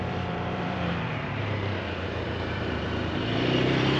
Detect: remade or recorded remade